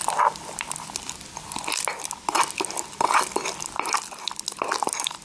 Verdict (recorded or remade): recorded